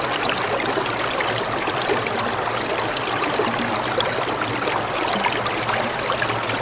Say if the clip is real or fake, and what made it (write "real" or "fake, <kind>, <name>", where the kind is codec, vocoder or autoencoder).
real